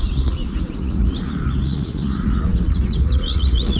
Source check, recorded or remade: remade